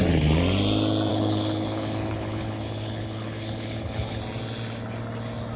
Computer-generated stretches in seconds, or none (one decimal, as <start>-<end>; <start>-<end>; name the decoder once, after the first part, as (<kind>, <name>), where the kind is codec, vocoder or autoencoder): 1.1-4.2 (codec, HILCodec)